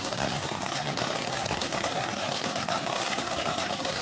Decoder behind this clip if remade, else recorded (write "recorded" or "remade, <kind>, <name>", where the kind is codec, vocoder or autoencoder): remade, codec, SNAC